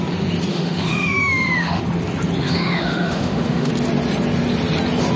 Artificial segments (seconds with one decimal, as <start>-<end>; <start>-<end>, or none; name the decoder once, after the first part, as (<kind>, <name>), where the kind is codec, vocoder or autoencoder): 0.5-1.8 (autoencoder, DAC-VAE); 2.4-3.7